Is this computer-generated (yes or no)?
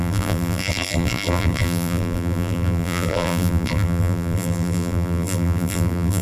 yes